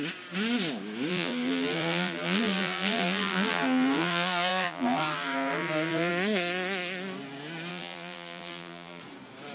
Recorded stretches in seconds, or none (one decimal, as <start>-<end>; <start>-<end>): 0.0-1.1; 6.1-7.7; 9.0-9.5